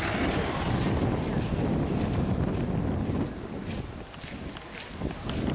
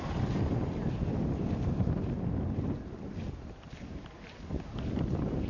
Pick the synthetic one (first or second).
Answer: second